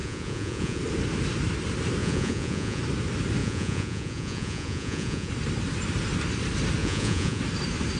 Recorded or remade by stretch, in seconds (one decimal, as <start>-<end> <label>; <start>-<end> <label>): 0.0-0.8 remade; 0.8-2.0 recorded; 2.0-2.8 remade; 2.8-3.4 recorded; 3.4-5.3 remade; 5.3-6.8 recorded; 6.8-7.4 remade; 7.4-8.0 recorded